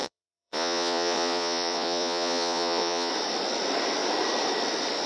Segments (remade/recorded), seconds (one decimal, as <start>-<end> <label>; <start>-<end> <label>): 0.0-3.1 remade; 3.1-5.1 recorded